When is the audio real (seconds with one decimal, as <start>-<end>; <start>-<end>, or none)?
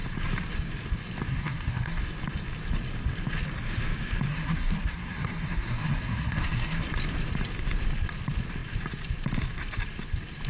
0.0-1.3; 2.0-4.3; 6.8-10.5